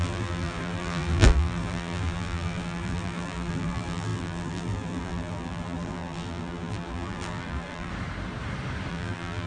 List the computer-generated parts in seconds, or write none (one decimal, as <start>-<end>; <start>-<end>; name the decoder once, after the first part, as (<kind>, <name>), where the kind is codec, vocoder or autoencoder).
0.0-7.9 (vocoder, BigVGAN v2); 8.9-9.5